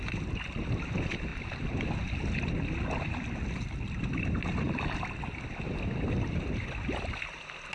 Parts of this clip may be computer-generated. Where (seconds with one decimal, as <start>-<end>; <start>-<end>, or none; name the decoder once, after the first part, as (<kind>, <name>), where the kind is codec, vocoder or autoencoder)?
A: none